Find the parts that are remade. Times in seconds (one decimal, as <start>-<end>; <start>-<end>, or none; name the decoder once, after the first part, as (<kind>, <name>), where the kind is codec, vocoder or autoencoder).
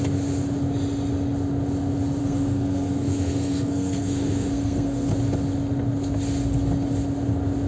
2.2-5.1 (codec, SNAC)